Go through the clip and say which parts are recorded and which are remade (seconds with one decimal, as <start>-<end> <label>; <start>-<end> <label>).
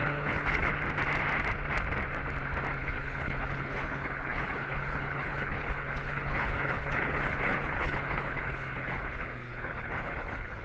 0.0-0.7 remade; 0.7-2.8 recorded; 2.8-10.6 remade